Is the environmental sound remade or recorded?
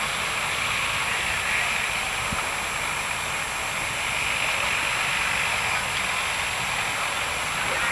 recorded